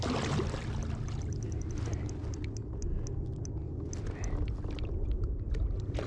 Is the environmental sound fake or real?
real